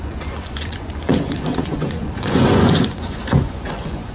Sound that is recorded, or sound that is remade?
remade